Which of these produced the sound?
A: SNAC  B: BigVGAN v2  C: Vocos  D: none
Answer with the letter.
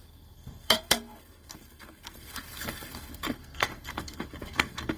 A